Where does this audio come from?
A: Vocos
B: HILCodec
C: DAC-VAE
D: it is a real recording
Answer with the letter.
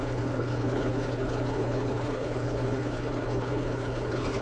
B